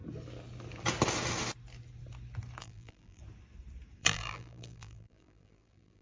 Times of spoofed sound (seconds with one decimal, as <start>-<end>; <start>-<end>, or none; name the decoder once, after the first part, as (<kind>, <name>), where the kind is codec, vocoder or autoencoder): 2.6-3.2 (vocoder, BigVGAN v2); 4.0-6.0